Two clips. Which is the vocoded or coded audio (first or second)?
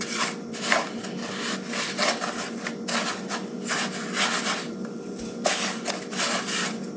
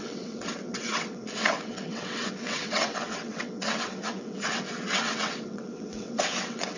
second